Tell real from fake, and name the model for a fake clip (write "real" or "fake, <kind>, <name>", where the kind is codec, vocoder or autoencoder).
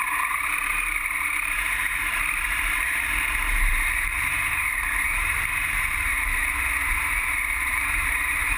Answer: fake, vocoder, BigVGAN v2